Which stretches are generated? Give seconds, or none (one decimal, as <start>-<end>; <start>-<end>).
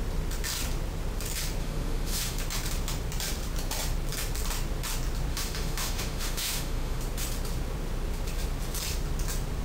1.6-2.4; 5.3-7.0